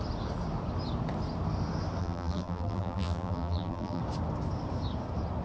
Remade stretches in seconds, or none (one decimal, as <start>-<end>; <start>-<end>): 2.0-4.0